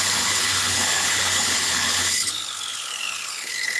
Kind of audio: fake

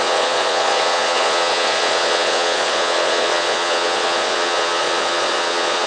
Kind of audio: fake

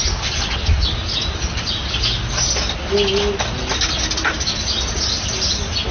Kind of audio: real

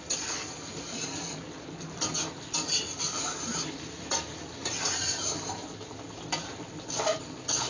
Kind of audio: real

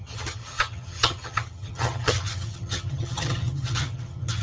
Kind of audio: fake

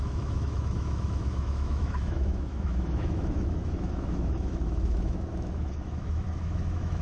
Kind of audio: fake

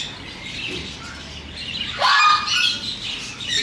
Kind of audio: real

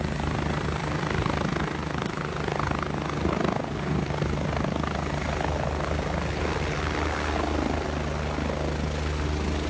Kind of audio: real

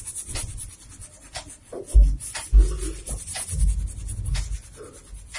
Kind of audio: real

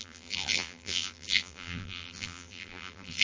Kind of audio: fake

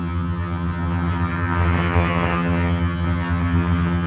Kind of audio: fake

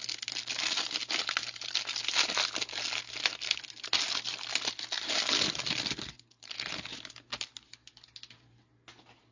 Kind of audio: real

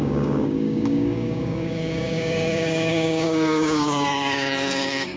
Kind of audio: fake